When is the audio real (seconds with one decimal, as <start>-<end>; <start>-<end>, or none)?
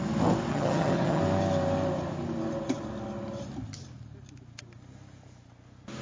0.0-0.5; 1.2-6.0